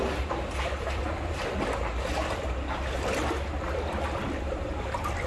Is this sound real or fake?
real